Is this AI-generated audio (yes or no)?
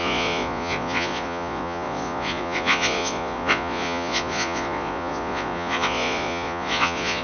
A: yes